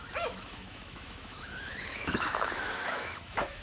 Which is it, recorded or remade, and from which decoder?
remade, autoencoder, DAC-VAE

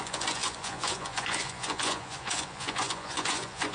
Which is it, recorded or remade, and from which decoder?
remade, vocoder, Vocos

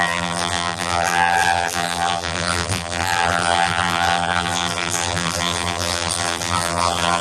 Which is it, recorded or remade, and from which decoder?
remade, vocoder, BigVGAN v2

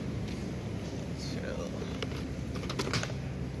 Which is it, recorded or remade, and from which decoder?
recorded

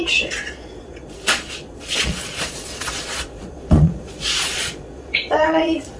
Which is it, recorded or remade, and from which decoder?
remade, vocoder, Vocos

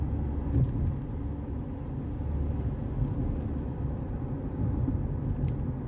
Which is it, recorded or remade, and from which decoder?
recorded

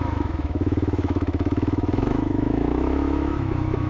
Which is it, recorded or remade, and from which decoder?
remade, autoencoder, DAC-VAE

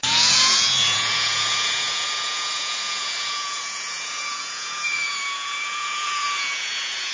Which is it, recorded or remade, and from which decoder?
remade, vocoder, Vocos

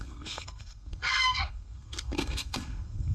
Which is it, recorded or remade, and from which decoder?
remade, codec, SNAC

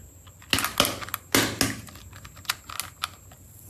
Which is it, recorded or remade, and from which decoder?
recorded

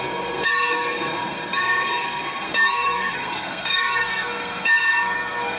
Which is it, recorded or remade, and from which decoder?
remade, codec, SNAC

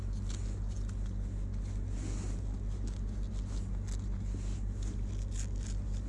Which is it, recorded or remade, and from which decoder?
recorded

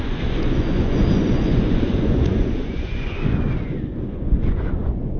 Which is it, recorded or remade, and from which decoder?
remade, vocoder, Vocos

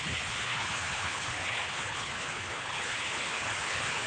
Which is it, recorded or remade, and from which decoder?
remade, codec, HILCodec